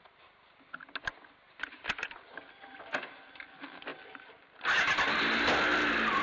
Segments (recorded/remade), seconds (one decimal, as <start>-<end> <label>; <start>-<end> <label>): 0.0-6.2 recorded